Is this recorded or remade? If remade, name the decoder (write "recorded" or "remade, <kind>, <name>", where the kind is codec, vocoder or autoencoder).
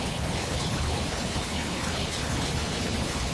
remade, codec, HILCodec